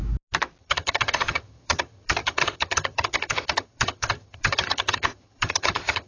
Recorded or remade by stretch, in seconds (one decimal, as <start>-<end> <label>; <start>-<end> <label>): 0.0-0.6 recorded; 0.6-6.1 remade